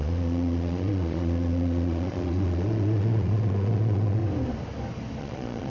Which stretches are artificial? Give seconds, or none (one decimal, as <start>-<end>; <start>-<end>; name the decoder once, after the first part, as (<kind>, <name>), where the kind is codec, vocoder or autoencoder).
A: 0.0-4.2 (vocoder, Vocos); 5.2-5.7